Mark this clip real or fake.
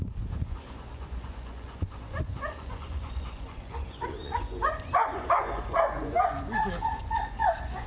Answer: fake